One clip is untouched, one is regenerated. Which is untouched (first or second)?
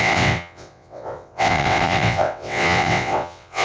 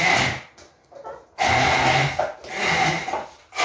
second